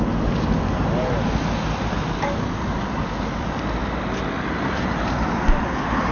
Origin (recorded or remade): recorded